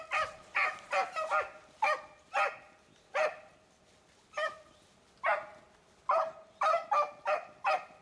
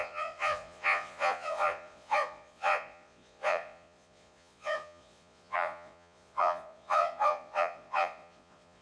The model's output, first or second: second